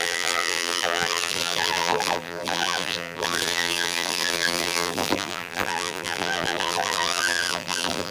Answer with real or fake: fake